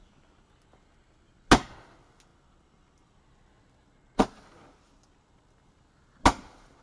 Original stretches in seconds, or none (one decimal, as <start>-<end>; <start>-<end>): 0.0-6.8